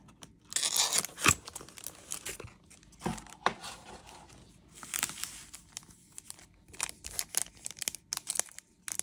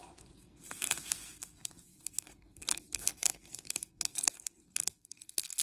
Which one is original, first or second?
first